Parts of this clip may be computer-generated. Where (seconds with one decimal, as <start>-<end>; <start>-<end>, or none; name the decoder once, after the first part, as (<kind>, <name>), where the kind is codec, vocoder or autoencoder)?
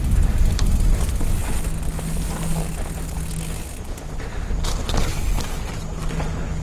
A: none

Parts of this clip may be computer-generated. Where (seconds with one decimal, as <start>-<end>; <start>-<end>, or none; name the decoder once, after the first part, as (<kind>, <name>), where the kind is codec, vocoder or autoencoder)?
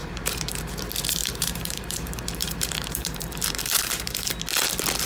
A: 0.0-0.6 (vocoder, BigVGAN v2); 1.2-4.3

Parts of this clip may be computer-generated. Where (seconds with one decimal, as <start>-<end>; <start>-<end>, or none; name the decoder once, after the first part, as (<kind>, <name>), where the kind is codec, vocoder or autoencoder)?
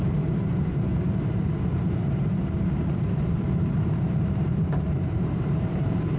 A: 0.0-6.2 (vocoder, BigVGAN v2)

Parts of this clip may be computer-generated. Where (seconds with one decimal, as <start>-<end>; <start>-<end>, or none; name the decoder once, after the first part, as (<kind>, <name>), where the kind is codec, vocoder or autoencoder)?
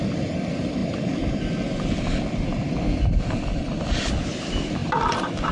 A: none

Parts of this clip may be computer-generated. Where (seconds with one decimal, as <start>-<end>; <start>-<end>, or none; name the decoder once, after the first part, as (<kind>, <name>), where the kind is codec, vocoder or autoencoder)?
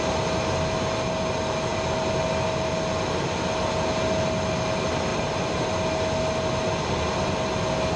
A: 5.1-5.7 (vocoder, BigVGAN v2)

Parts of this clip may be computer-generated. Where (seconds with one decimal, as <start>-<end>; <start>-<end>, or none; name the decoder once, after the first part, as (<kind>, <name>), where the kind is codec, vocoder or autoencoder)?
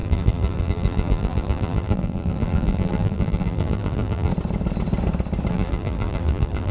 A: 0.0-4.3 (vocoder, BigVGAN v2); 5.5-6.7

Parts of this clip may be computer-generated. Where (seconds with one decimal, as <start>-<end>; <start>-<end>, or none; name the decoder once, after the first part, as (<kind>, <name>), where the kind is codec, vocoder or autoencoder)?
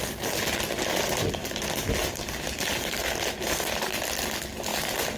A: none